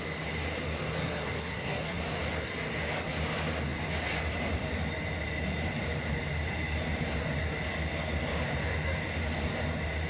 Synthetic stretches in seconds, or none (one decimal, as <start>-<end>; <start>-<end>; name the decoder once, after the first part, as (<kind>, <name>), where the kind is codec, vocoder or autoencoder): 1.0-2.0 (codec, SNAC)